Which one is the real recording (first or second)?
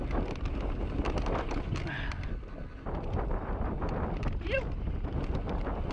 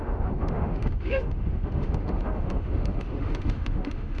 first